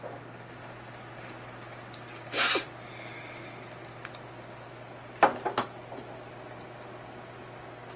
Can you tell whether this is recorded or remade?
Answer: recorded